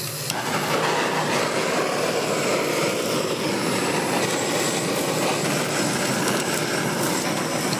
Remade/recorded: recorded